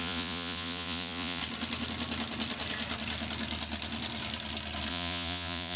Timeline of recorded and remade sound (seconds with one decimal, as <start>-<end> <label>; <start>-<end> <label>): 0.0-1.4 remade; 1.4-4.9 recorded; 4.9-5.8 remade